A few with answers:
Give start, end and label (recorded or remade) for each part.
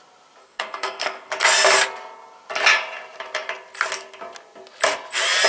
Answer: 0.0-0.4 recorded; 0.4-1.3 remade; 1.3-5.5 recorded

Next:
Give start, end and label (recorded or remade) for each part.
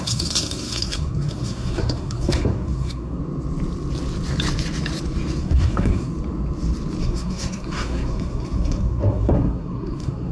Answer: 0.0-3.2 remade; 3.2-5.4 recorded; 5.4-6.1 remade; 6.1-7.0 recorded; 7.0-10.3 remade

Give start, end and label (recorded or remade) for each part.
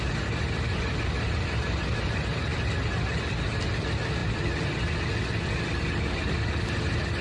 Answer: 0.0-7.2 recorded